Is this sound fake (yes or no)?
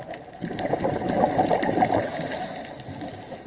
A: no